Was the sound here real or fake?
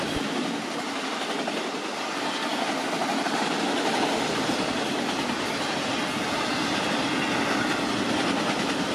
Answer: real